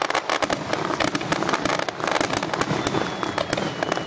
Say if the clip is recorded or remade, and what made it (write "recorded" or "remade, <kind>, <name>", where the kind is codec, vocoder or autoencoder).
recorded